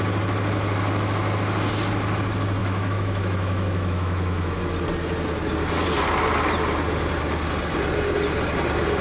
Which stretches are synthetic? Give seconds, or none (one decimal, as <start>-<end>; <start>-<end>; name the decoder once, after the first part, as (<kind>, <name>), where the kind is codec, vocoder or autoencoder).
2.6-4.6 (autoencoder, DAC-VAE)